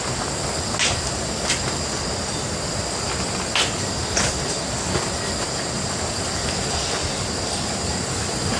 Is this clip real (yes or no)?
yes